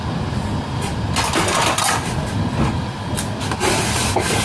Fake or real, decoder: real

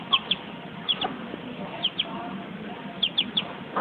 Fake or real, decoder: real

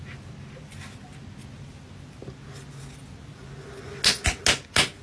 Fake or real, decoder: real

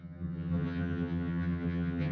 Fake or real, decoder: fake, vocoder, HiFi-GAN